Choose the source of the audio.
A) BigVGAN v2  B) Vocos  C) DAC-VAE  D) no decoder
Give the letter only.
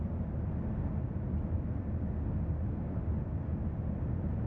D